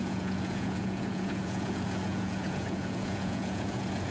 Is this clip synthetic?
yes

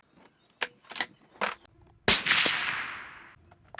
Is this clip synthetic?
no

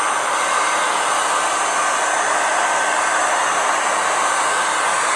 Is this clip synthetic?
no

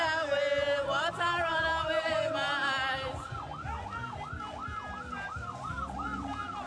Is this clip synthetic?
no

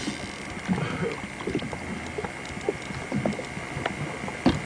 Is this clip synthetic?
no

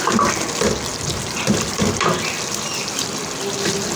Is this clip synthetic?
no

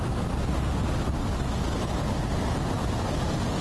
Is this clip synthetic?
no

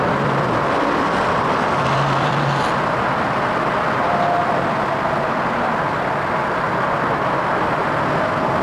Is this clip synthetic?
no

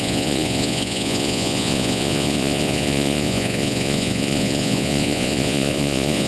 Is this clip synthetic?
yes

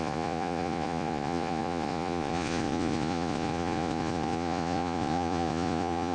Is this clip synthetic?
yes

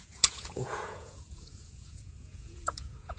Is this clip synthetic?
yes